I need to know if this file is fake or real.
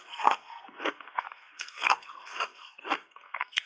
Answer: fake